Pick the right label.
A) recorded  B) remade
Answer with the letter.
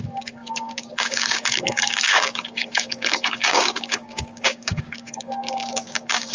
B